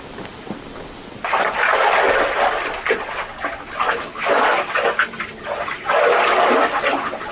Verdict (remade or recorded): recorded